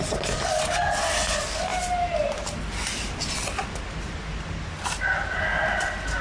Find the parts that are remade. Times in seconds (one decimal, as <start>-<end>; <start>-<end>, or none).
none